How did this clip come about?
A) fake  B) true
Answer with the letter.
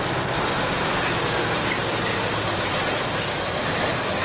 B